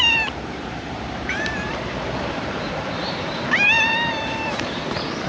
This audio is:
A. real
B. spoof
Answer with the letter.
B